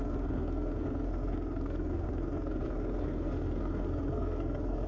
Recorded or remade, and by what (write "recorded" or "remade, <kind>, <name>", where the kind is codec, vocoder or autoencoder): remade, codec, SNAC